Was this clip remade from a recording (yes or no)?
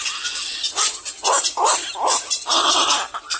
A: no